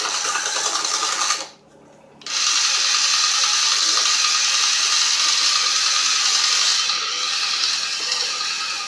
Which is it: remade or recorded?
recorded